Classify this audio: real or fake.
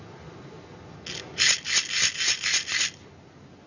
real